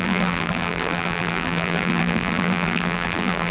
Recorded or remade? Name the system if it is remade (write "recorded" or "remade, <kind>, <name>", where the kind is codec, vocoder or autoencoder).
remade, vocoder, BigVGAN v2